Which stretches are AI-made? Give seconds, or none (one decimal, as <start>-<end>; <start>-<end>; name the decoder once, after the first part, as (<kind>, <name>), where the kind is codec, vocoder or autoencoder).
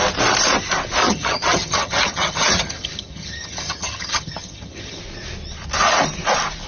1.0-5.0 (vocoder, HiFi-GAN)